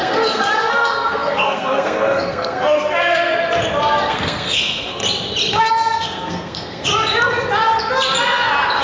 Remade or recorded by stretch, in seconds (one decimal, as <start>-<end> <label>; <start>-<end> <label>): 0.0-3.3 remade; 3.3-4.1 recorded; 4.1-5.0 remade; 5.0-5.6 recorded; 5.6-6.9 remade; 6.9-8.8 recorded